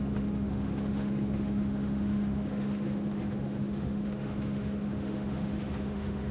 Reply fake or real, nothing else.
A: fake